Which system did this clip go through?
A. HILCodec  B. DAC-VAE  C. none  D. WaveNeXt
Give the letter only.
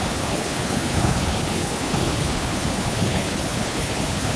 A